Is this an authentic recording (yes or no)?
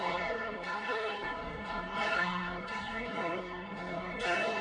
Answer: no